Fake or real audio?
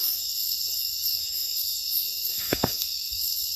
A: fake